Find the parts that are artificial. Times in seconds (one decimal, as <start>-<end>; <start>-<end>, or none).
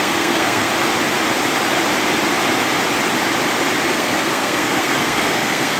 0.0-0.7; 3.9-5.8